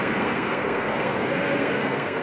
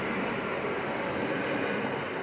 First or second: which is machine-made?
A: first